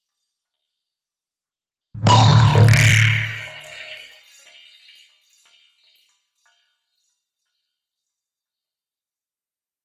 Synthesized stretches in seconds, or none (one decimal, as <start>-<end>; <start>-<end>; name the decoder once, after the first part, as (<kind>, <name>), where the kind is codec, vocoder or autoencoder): 3.3-4.2 (codec, SNAC)